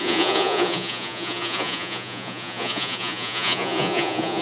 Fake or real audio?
fake